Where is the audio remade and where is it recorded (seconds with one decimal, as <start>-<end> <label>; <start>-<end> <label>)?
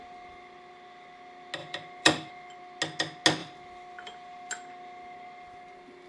0.0-1.6 recorded; 1.6-2.3 remade; 2.3-3.4 recorded; 3.4-4.5 remade; 4.5-6.1 recorded